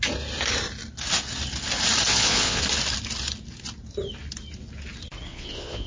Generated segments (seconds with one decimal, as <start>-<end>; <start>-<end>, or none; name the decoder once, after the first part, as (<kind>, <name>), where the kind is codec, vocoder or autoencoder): 2.1-2.6 (vocoder, Vocos); 5.3-5.9